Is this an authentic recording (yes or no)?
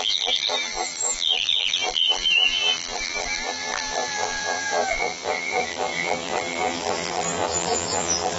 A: no